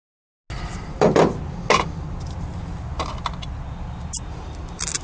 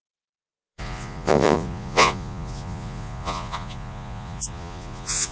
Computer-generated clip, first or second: second